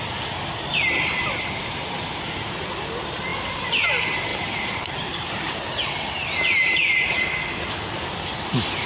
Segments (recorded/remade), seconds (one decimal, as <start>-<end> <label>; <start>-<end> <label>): 0.0-3.3 recorded; 3.3-3.9 remade; 3.9-4.3 recorded; 4.3-5.6 remade; 5.6-8.9 recorded